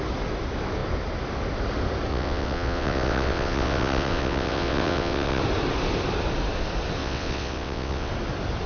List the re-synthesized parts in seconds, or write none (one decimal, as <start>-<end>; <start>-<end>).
2.1-5.4; 7.0-8.1